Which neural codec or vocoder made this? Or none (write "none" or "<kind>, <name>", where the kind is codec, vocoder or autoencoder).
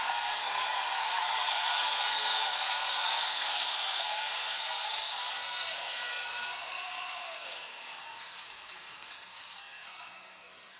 codec, SNAC